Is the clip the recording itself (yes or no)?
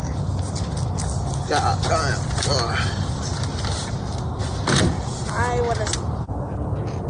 yes